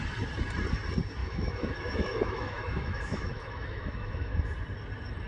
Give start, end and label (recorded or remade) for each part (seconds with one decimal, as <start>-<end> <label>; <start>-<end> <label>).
0.0-1.2 recorded; 1.2-4.4 remade; 4.4-5.3 recorded